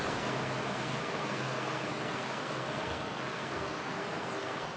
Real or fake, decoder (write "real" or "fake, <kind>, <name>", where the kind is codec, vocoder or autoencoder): fake, codec, SNAC